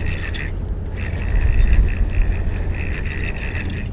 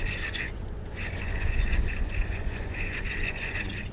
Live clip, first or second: first